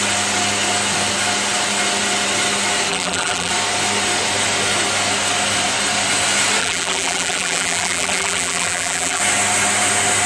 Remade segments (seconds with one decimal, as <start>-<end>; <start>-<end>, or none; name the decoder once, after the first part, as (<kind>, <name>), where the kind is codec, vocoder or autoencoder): 2.9-3.5 (vocoder, BigVGAN v2); 6.6-9.2